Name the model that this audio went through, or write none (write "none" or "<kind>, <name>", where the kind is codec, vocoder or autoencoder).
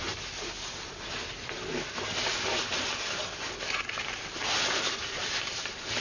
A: none